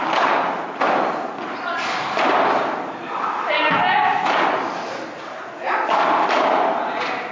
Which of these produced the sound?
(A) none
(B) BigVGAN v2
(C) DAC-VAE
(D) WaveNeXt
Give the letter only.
A